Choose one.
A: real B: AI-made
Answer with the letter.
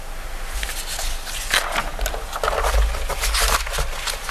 A